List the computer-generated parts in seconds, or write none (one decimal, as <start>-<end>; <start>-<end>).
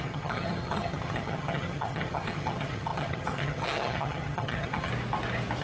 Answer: 0.0-4.9